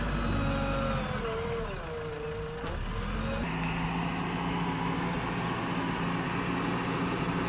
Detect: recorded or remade recorded